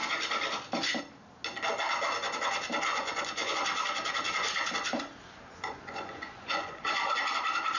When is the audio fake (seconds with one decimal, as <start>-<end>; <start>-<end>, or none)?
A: 2.9-3.6; 5.5-7.2